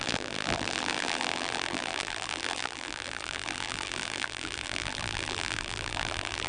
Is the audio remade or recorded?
remade